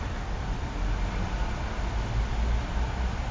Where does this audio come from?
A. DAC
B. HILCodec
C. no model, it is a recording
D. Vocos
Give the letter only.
C